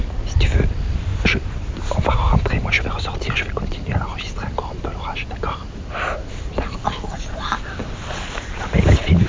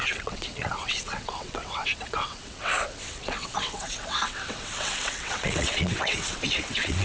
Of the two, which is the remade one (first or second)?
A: second